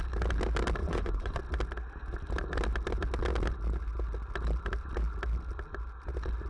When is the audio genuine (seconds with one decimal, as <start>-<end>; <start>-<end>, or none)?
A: 0.0-0.8; 1.4-6.5